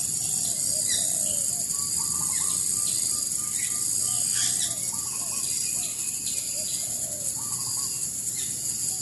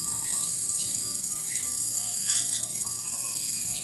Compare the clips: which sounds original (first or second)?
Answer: first